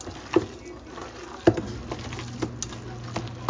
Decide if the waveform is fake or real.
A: real